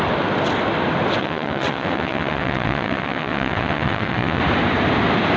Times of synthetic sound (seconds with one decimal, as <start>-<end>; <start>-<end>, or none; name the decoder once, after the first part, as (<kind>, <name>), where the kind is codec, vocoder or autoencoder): 1.2-4.4 (vocoder, WaveNeXt)